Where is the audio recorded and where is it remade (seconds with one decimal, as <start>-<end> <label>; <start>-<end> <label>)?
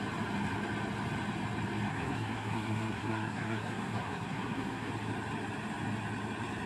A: 0.0-1.9 recorded; 1.9-4.9 remade; 4.9-6.7 recorded